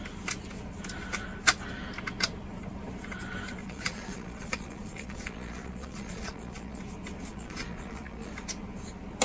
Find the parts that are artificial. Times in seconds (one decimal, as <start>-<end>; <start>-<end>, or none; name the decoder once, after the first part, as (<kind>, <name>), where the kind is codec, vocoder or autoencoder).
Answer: 3.6-6.8 (vocoder, Vocos); 7.3-8.3